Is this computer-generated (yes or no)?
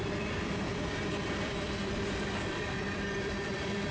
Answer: yes